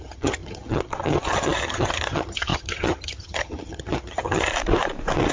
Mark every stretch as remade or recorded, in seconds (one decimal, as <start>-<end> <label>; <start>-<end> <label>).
0.0-4.5 remade; 4.5-5.3 recorded